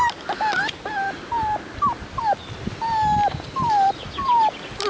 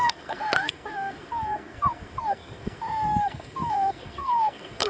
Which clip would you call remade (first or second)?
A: second